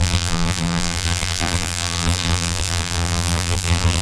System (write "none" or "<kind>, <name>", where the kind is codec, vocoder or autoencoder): vocoder, BigVGAN v2